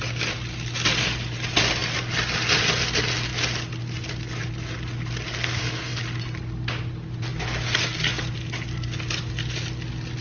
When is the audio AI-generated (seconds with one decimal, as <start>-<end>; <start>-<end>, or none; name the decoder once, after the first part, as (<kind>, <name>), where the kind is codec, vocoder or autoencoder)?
5.3-6.0 (codec, SNAC)